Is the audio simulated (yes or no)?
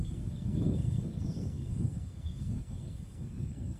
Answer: yes